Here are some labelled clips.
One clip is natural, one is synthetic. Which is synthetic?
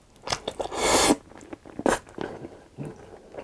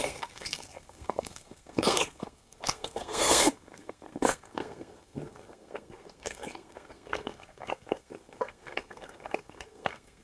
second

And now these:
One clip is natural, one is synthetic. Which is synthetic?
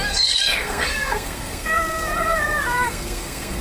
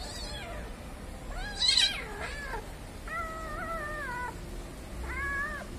first